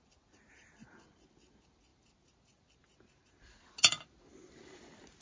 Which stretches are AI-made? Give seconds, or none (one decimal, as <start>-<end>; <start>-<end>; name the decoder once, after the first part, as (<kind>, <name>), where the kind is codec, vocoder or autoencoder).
none